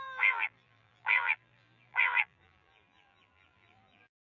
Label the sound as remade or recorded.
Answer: remade